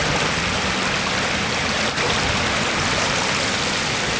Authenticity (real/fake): real